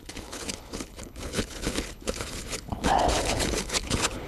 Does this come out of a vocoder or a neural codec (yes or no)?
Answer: yes